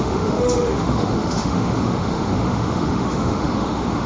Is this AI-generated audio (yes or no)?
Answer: yes